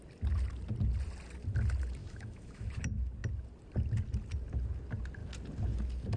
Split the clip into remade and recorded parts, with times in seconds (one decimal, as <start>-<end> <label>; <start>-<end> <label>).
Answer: 0.0-2.0 recorded; 2.0-2.7 remade; 2.7-6.2 recorded